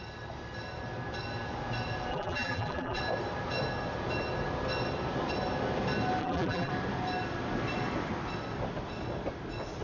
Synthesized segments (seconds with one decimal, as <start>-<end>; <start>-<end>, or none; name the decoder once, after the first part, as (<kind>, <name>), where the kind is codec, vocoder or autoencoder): 2.1-3.0 (vocoder, BigVGAN v2); 6.2-6.7